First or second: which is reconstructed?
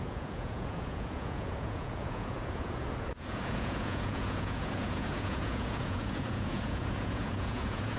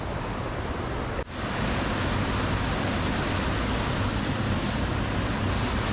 first